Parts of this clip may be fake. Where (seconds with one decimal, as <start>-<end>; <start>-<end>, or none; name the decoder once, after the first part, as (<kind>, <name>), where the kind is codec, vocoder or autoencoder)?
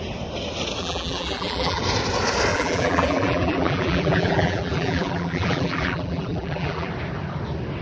0.8-1.8 (vocoder, BigVGAN v2); 2.5-6.9